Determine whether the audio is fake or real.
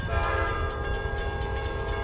fake